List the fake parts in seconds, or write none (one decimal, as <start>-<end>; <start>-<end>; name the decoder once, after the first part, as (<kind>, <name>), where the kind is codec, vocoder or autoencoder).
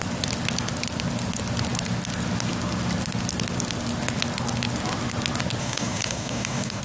5.6-6.8 (codec, DAC)